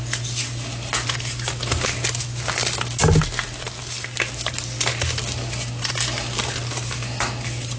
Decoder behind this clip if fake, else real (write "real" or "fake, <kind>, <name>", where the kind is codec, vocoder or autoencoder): real